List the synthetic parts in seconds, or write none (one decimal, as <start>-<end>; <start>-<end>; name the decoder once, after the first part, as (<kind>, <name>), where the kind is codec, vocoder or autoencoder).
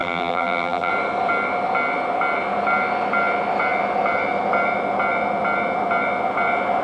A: 0.0-0.9 (vocoder, BigVGAN v2)